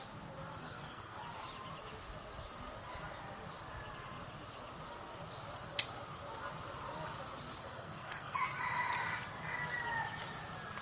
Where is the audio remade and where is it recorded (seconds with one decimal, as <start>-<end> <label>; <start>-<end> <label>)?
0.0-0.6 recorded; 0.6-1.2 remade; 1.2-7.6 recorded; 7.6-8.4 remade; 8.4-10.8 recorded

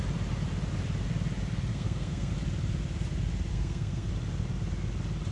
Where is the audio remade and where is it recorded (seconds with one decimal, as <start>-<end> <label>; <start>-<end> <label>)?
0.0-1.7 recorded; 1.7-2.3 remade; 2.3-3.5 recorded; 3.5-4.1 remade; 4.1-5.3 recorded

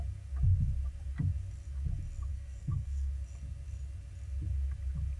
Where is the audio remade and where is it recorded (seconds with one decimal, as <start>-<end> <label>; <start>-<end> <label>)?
0.0-2.3 recorded; 2.3-3.1 remade; 3.1-5.2 recorded